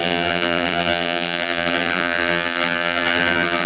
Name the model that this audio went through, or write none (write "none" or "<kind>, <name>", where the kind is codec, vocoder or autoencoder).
vocoder, BigVGAN v2